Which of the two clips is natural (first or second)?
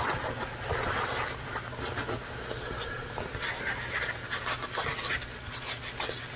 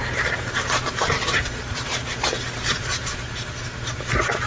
first